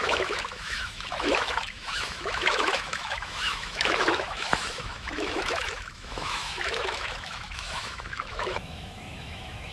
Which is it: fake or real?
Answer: fake